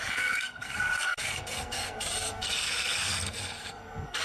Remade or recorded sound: remade